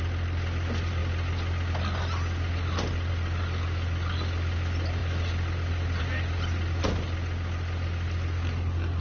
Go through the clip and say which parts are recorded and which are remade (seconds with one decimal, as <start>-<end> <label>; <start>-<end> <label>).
0.0-9.0 recorded